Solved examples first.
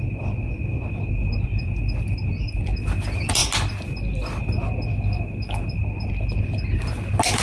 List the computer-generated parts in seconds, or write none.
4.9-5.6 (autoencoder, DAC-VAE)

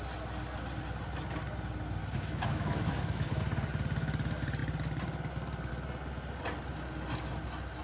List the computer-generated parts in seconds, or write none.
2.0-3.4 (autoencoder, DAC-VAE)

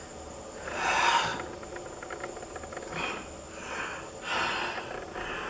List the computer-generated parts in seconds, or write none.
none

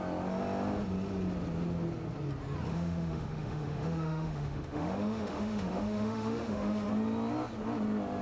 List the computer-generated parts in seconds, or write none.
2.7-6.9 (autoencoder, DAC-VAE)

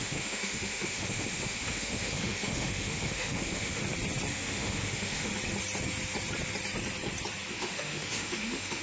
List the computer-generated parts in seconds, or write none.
0.0-3.8 (autoencoder, DAC-VAE); 4.3-5.3; 7.5-8.8

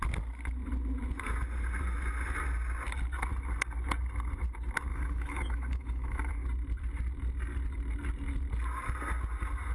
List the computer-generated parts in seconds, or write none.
4.9-6.3 (autoencoder, DAC-VAE)